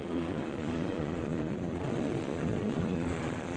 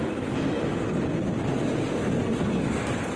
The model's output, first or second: first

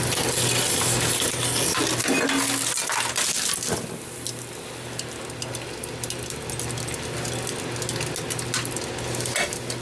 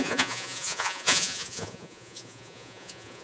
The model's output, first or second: second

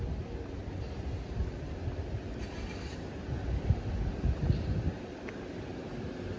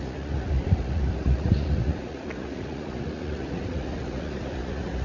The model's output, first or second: second